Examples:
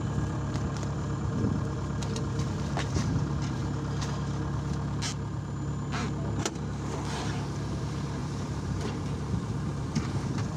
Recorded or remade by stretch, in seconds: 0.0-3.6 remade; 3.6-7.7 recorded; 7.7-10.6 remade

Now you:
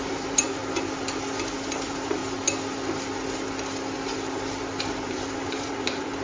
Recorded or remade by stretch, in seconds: 0.0-0.6 remade; 0.6-1.7 recorded; 1.7-2.2 remade; 2.2-4.8 recorded; 4.8-6.2 remade

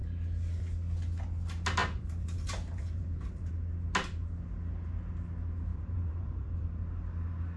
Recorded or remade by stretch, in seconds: 0.0-1.8 recorded; 1.8-3.5 remade; 3.5-5.7 recorded; 5.7-6.8 remade; 6.8-7.6 recorded

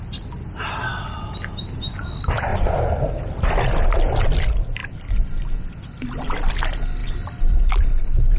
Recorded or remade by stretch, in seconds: 0.0-2.5 recorded; 2.5-3.1 remade; 3.1-7.0 recorded; 7.0-7.7 remade; 7.7-8.4 recorded

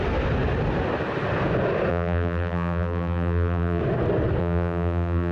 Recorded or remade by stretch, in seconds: 0.0-1.9 recorded; 1.9-3.8 remade; 3.8-4.4 recorded; 4.4-5.3 remade

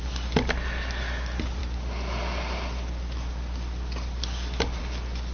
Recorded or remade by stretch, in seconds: 0.0-5.3 recorded

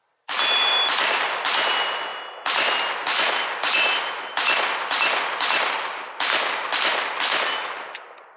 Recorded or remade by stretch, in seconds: 0.0-8.4 remade